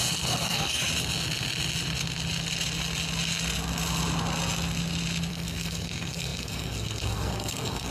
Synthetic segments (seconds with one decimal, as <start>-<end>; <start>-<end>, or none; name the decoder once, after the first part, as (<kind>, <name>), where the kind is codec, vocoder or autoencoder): 0.0-0.8 (codec, SNAC); 5.3-7.9